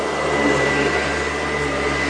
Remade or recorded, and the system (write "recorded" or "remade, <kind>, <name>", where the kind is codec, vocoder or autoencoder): recorded